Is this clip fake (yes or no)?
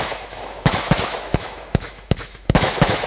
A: yes